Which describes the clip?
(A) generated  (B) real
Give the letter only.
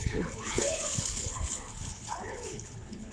A